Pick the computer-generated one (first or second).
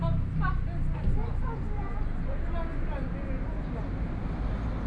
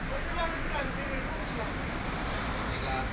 second